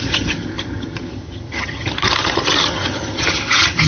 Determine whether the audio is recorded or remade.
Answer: remade